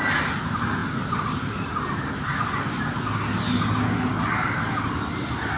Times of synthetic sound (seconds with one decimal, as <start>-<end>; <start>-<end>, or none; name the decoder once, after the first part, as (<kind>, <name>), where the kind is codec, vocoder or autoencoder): none